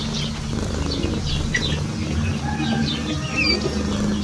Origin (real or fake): real